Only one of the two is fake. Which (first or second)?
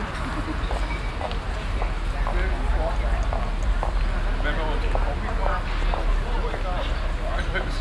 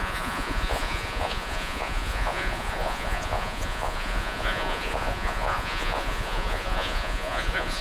second